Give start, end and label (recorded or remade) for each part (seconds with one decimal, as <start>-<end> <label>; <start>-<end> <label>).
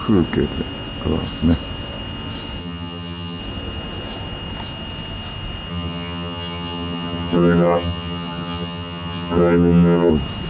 0.0-2.6 recorded; 2.6-3.4 remade; 3.4-5.7 recorded; 5.7-10.1 remade; 10.1-10.5 recorded